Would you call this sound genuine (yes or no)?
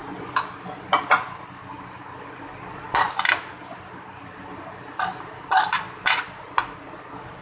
yes